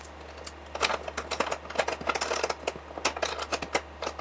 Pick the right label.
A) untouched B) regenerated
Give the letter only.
A